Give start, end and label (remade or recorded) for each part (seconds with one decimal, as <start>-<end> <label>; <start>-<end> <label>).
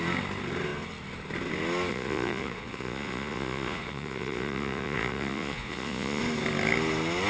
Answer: 0.0-1.9 recorded; 1.9-6.2 remade; 6.2-7.3 recorded